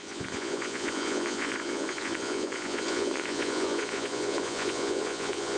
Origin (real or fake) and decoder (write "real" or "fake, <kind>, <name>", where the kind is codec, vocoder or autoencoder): fake, vocoder, Vocos